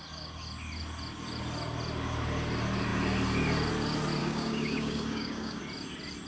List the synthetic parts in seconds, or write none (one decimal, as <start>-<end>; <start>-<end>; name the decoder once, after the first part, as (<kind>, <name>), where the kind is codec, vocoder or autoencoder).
4.2-5.6 (codec, DAC)